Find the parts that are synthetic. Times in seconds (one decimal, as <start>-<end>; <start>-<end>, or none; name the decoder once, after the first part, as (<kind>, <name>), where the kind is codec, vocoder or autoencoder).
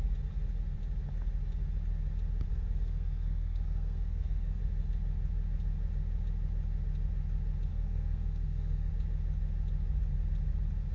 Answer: 2.5-4.6 (codec, SNAC); 7.7-8.9